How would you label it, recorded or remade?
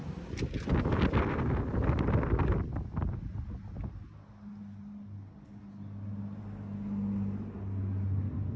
recorded